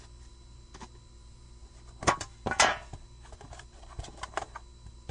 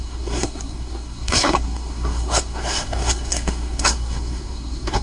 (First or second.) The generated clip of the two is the second